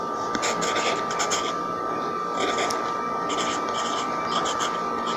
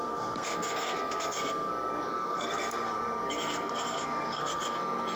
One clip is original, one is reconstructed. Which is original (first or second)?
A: first